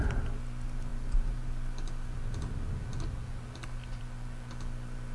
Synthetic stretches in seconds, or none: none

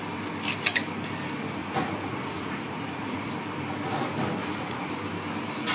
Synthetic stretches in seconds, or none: 1.6-3.3 (vocoder, Vocos); 4.4-4.9

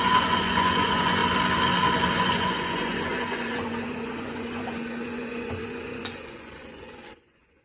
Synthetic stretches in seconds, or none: 0.0-1.2 (vocoder, Vocos); 2.1-7.6

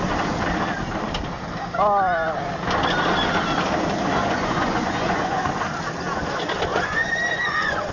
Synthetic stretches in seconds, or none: 4.2-5.5 (vocoder, Vocos); 6.7-7.9

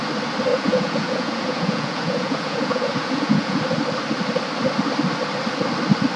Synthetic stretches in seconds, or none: 0.5-3.6 (vocoder, Vocos)

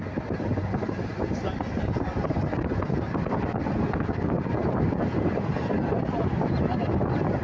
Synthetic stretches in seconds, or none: none

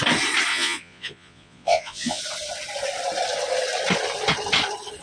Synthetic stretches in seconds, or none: 0.5-2.2 (vocoder, Vocos)